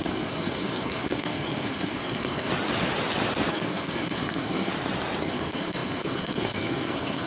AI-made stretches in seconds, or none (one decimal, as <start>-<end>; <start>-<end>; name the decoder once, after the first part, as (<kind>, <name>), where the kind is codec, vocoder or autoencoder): 0.0-2.5 (codec, SNAC); 3.5-4.7; 5.2-7.3